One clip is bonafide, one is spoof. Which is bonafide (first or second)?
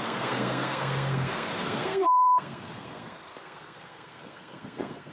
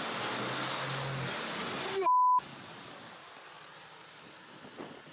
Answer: second